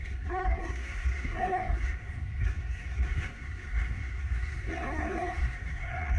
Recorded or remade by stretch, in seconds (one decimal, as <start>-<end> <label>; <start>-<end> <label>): 0.0-6.2 remade